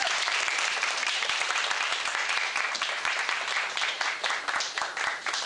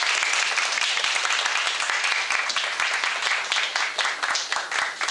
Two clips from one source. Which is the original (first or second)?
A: second